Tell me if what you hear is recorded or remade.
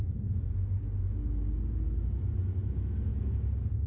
recorded